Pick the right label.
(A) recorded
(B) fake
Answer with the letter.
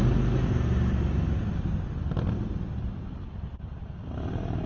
A